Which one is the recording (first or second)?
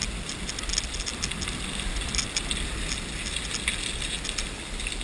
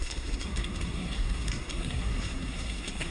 first